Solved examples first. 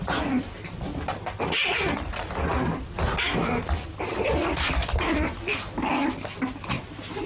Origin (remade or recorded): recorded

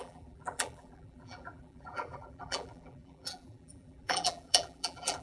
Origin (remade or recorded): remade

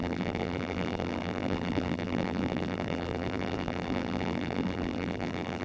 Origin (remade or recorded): remade